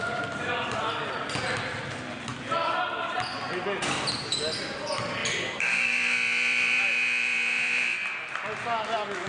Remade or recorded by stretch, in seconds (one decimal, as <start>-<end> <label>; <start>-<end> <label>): 0.0-5.2 recorded; 5.2-7.8 remade; 7.8-9.3 recorded